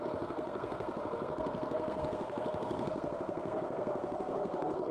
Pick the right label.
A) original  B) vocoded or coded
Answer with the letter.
B